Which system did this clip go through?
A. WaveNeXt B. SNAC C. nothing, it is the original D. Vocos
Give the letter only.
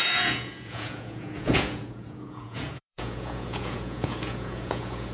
D